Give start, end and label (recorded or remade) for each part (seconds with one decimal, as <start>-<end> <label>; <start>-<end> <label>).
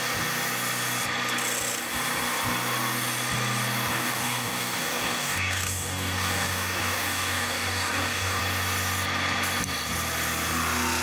0.0-3.9 recorded; 3.9-8.4 remade; 8.4-11.0 recorded